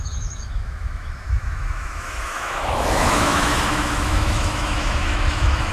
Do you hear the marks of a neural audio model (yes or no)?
yes